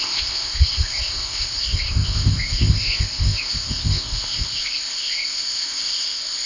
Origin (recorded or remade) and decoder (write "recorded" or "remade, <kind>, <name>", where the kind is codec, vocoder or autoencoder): remade, codec, ZipCodec